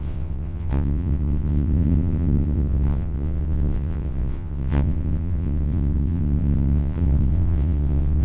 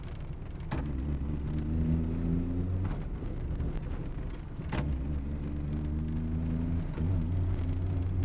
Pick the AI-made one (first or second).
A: first